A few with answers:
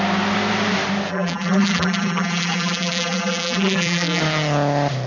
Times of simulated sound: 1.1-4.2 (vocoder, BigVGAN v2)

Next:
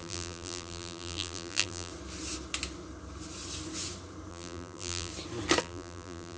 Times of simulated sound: 0.0-1.9 (vocoder, BigVGAN v2); 4.3-5.1; 5.6-6.4

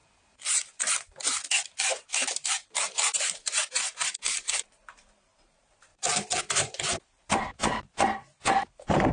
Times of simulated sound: 0.0-9.1 (vocoder, BigVGAN v2)

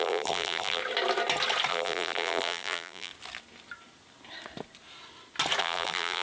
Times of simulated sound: 0.0-0.8 (vocoder, BigVGAN v2); 1.7-3.1; 5.6-6.2

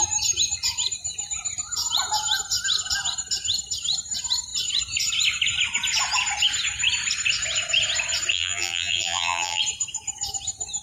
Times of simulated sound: 8.3-9.6 (vocoder, BigVGAN v2)

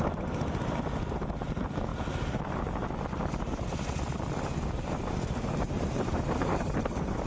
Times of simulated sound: 0.0-1.9 (vocoder, BigVGAN v2); 4.6-7.3

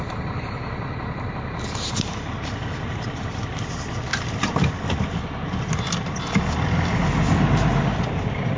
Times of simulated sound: 0.0-8.6 (vocoder, BigVGAN v2)